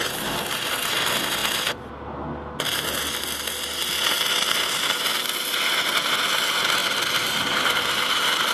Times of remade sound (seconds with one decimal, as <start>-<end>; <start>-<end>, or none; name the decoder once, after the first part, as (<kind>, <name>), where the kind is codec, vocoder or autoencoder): 1.4-1.9 (vocoder, BigVGAN v2); 6.8-8.5